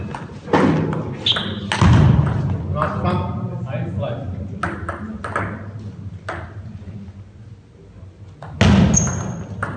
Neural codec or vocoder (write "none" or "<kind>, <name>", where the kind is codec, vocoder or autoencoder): none